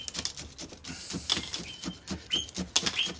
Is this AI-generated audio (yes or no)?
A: no